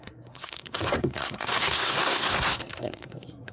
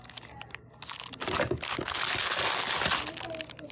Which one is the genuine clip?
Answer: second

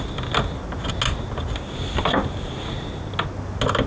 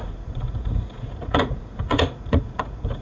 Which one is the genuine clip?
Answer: first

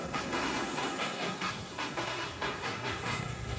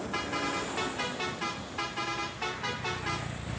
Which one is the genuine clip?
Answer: second